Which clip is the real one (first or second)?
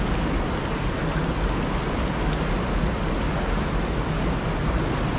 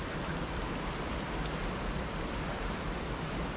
first